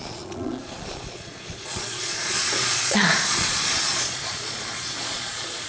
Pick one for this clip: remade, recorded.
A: remade